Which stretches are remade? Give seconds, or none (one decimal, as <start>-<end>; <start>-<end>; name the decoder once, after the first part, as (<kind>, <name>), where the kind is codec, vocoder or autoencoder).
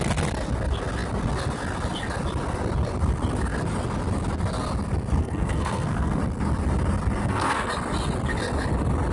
5.2-6.2 (codec, SNAC); 7.2-7.7